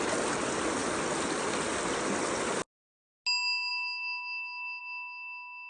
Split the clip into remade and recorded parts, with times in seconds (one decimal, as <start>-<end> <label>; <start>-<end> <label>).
0.0-5.7 recorded